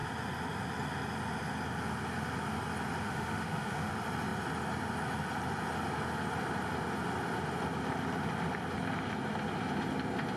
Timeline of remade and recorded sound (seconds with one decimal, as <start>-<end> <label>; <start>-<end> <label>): 0.0-3.0 recorded; 3.0-3.9 remade; 3.9-10.4 recorded